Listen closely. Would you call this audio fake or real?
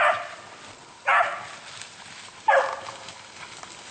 real